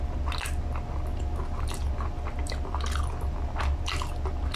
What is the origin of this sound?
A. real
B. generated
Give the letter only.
A